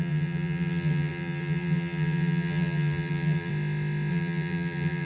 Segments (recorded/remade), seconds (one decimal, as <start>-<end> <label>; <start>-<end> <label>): 0.0-3.5 remade; 3.5-4.1 recorded; 4.1-5.1 remade